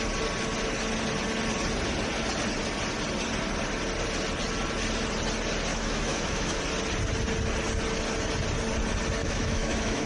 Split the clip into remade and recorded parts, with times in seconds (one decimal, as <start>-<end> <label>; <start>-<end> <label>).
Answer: 0.0-5.7 recorded; 5.7-6.6 remade; 6.6-9.2 recorded; 9.2-10.1 remade